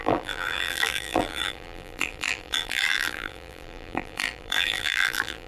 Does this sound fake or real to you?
fake